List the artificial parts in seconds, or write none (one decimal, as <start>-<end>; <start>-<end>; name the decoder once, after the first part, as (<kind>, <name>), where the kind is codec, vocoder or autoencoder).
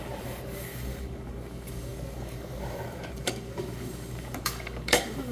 0.0-5.3 (codec, DAC)